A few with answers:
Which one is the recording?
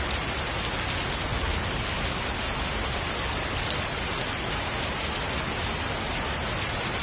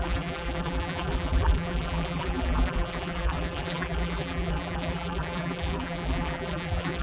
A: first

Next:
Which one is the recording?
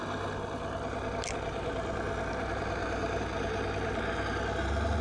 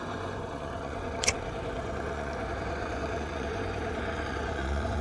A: first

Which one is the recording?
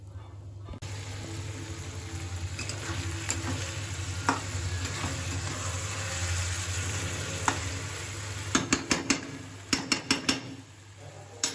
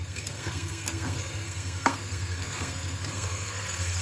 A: first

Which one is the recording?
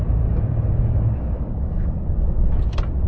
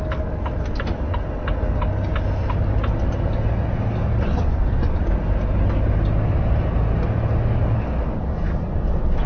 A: second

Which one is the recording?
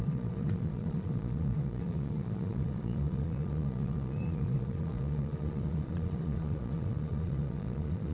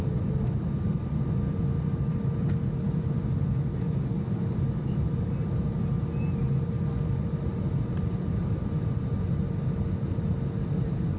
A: second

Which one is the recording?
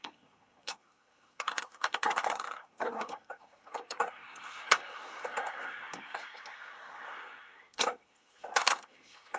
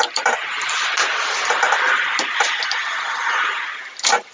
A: second